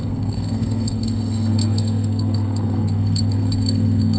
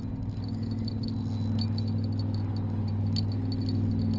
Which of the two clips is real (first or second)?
second